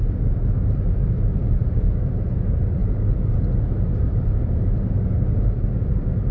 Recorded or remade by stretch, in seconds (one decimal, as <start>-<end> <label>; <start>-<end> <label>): 0.0-1.3 recorded; 1.3-2.4 remade; 2.4-6.3 recorded